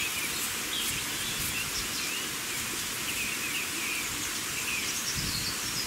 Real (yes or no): yes